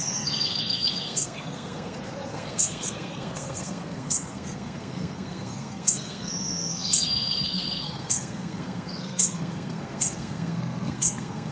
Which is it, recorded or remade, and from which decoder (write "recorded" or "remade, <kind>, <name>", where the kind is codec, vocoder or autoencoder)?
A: remade, codec, SNAC